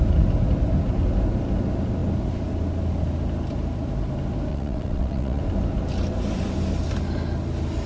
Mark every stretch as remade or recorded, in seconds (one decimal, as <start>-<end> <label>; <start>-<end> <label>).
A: 0.0-4.5 recorded; 4.5-5.4 remade; 5.4-7.9 recorded